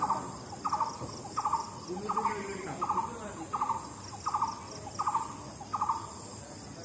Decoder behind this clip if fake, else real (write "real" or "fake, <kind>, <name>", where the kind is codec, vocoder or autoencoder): real